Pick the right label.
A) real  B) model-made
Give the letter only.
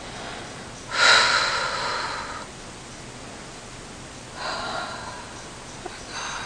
A